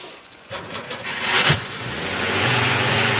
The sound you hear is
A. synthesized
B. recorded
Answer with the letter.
A